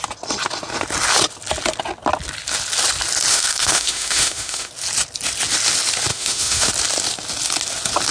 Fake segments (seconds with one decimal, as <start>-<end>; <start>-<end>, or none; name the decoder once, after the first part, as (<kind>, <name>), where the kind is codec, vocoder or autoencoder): 3.3-4.7 (autoencoder, DAC-VAE); 6.1-6.7